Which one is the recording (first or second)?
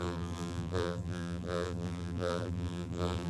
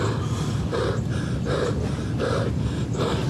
second